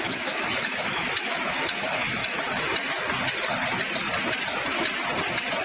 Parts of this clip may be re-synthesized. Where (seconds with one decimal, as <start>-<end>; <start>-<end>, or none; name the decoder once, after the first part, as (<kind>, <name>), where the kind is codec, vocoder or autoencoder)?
0.0-2.2 (autoencoder, DAC-VAE)